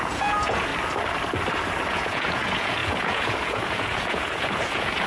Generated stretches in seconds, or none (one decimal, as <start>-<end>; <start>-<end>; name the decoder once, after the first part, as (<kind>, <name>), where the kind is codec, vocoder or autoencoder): 0.0-0.7 (vocoder, Vocos); 1.9-5.1